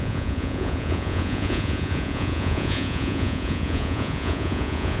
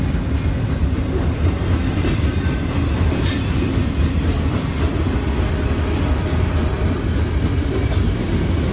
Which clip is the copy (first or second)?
first